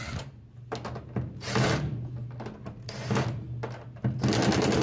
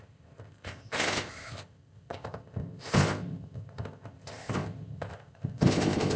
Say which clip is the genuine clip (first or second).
first